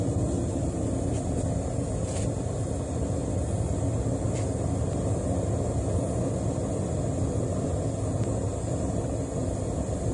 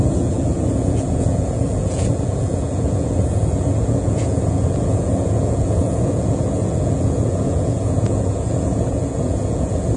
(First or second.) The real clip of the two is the first